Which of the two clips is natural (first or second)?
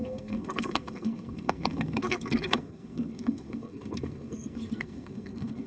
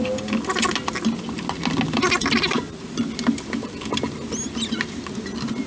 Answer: second